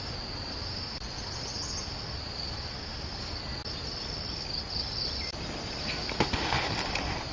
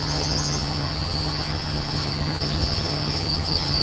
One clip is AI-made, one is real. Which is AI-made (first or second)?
second